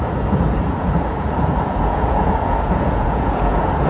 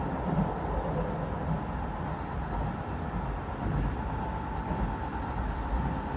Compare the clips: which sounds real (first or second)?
second